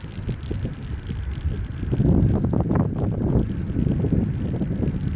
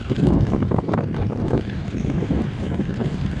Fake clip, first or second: second